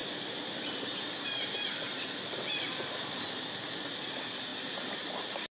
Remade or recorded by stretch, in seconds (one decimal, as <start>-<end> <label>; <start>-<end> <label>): 0.0-5.6 recorded